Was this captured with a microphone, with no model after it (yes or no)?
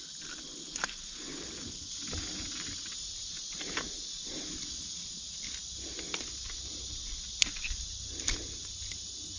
yes